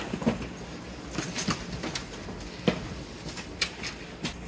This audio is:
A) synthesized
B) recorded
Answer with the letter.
B